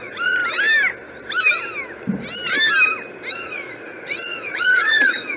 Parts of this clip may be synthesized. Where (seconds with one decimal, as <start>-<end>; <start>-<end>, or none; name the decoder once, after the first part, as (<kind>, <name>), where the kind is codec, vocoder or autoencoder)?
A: 0.0-0.4 (vocoder, Vocos); 3.3-5.4